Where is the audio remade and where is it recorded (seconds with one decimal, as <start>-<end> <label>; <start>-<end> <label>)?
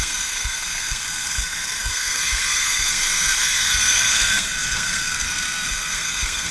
0.0-6.5 remade